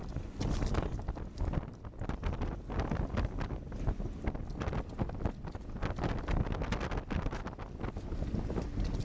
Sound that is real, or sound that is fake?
real